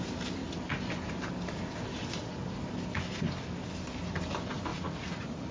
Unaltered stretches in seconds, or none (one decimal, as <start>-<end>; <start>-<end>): 0.0-4.7